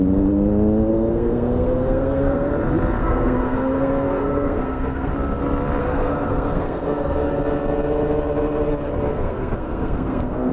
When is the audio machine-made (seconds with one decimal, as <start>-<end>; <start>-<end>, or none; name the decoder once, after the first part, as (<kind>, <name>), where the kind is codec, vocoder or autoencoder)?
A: 0.9-2.5 (codec, SNAC); 3.0-5.1; 5.8-7.4; 9.1-10.5